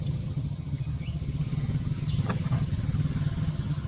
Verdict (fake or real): fake